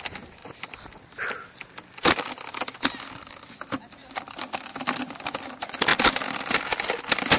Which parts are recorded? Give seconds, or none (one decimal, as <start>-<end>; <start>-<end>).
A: 0.0-7.4